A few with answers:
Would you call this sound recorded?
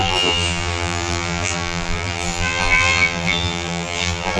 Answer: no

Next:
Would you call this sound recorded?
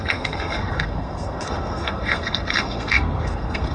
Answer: no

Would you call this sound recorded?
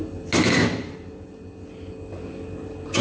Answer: yes